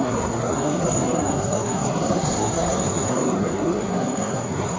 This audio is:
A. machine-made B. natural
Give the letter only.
A